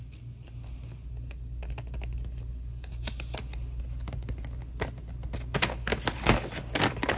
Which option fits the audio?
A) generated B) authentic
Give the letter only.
B